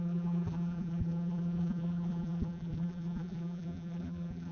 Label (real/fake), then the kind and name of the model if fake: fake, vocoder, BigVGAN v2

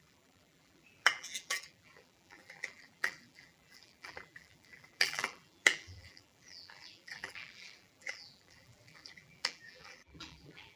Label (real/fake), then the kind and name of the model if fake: fake, vocoder, BigVGAN v2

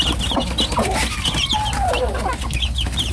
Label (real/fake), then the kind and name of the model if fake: real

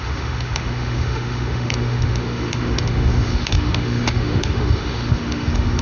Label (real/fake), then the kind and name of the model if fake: fake, autoencoder, DAC-VAE